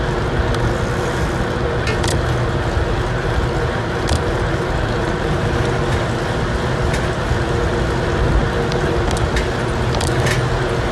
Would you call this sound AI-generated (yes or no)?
no